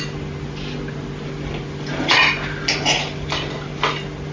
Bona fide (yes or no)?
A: yes